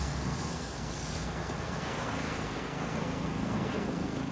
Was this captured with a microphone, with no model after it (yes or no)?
no